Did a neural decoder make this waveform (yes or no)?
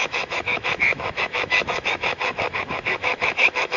yes